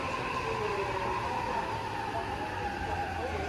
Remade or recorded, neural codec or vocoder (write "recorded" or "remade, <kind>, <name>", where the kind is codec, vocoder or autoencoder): recorded